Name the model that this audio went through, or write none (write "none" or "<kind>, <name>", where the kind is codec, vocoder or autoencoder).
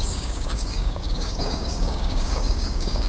codec, DAC